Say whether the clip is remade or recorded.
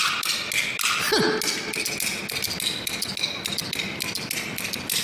recorded